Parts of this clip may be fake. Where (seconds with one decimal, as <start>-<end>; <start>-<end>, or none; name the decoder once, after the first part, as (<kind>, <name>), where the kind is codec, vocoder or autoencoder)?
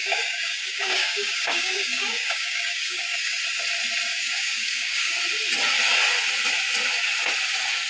0.0-3.4 (codec, DAC); 4.1-5.2